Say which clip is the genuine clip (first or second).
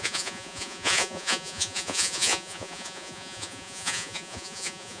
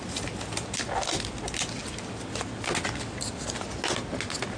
second